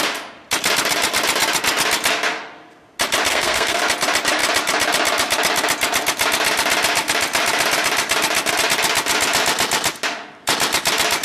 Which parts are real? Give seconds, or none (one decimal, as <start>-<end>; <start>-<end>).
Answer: 0.0-3.3; 3.8-11.2